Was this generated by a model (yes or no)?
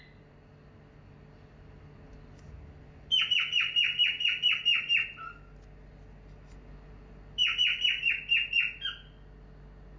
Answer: no